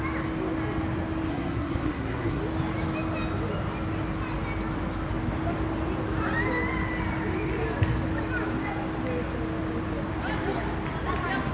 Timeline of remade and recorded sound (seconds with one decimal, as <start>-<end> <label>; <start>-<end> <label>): 0.0-1.3 recorded; 1.3-2.4 remade; 2.4-11.5 recorded